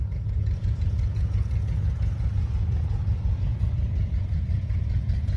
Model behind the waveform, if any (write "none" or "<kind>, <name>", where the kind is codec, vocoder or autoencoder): vocoder, Vocos